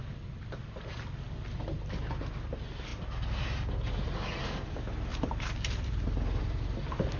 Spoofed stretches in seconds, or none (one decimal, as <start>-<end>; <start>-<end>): 5.1-6.6